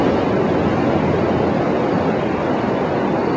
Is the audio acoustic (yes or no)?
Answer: yes